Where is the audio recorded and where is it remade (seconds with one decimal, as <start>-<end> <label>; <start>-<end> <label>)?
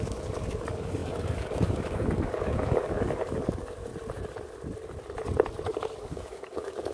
0.0-3.9 remade; 3.9-6.0 recorded; 6.0-6.9 remade